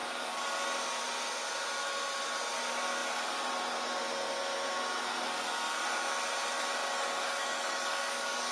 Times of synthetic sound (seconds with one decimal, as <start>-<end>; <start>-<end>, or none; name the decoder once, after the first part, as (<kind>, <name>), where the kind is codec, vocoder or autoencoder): 6.8-8.5 (codec, DAC)